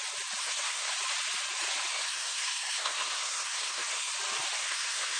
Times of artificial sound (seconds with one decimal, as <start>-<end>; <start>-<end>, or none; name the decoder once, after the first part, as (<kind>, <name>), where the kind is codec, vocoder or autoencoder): 0.4-0.9 (codec, SNAC); 1.9-4.1; 4.6-5.2